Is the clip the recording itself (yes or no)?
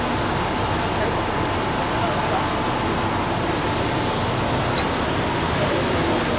yes